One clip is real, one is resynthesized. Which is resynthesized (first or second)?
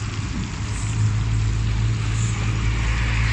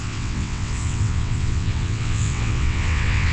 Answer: second